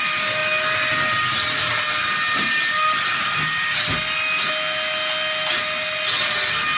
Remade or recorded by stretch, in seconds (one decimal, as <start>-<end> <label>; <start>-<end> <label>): 0.0-6.8 recorded